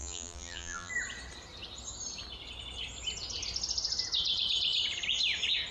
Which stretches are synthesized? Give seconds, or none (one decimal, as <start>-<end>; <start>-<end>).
0.0-0.9